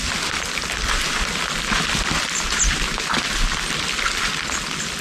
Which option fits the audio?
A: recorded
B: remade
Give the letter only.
A